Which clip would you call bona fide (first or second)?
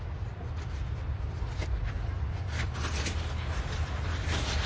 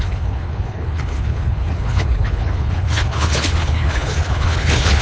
first